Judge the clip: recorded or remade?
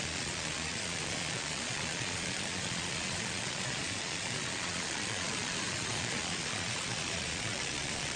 remade